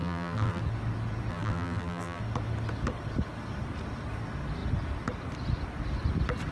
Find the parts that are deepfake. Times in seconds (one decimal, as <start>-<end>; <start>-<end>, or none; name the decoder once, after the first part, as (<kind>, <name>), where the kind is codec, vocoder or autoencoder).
0.0-0.6 (vocoder, BigVGAN v2); 1.3-2.2